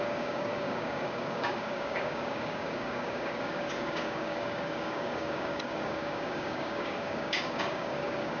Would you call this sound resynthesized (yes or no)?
yes